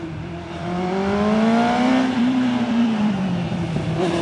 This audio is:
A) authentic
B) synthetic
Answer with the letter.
B